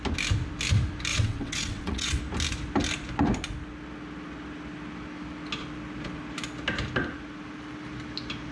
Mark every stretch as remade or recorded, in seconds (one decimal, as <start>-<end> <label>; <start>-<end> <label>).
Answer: 0.0-1.1 recorded; 1.1-2.2 remade; 2.2-8.5 recorded